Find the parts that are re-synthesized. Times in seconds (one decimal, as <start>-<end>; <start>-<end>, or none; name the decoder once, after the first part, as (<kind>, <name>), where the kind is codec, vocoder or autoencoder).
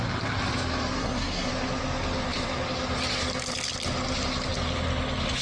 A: 1.0-1.5 (codec, SNAC)